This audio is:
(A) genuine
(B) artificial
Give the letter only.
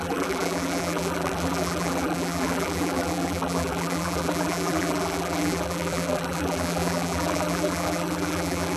B